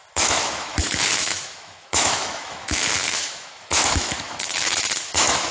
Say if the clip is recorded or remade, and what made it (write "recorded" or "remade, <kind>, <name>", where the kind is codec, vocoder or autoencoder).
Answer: remade, autoencoder, DAC-VAE